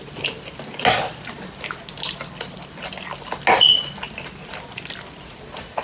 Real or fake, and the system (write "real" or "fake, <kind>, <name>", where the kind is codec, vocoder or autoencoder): real